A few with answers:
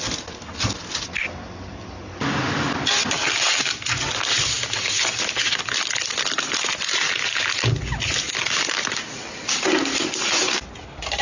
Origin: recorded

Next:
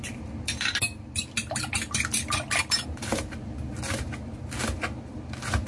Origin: recorded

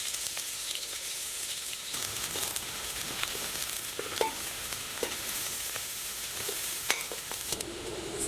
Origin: remade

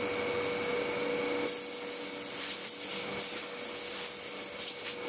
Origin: recorded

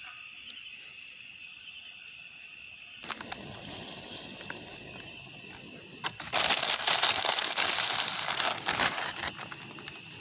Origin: recorded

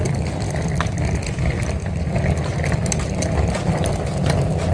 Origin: recorded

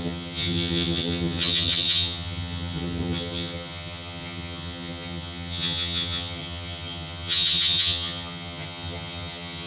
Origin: remade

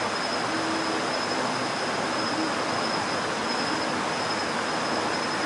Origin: recorded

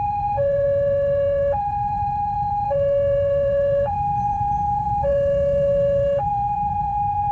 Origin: remade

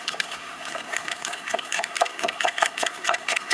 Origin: remade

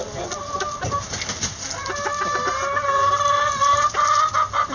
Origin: recorded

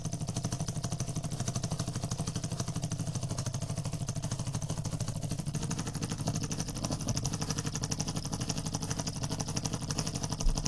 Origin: recorded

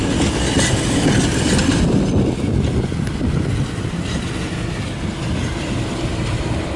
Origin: recorded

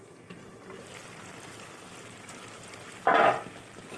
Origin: recorded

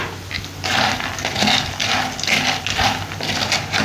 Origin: recorded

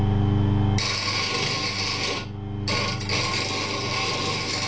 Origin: recorded